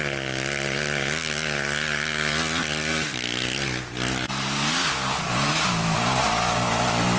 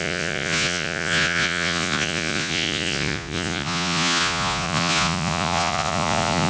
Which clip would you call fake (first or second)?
second